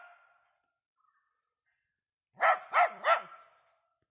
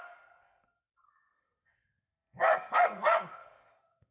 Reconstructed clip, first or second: second